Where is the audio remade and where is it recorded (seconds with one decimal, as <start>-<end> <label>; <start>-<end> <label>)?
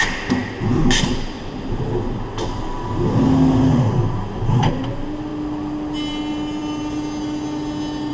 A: 0.0-8.1 recorded